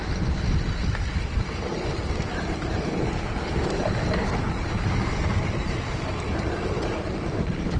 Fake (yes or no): yes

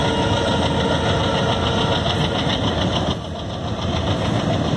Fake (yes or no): no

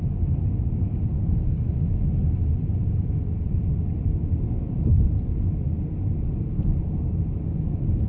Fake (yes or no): yes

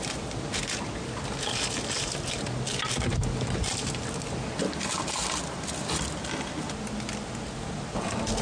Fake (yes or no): no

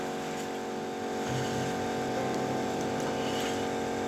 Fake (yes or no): no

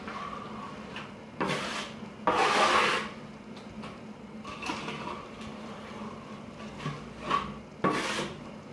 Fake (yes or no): no